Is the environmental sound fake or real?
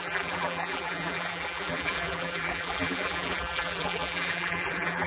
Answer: fake